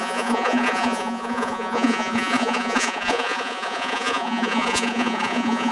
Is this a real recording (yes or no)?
no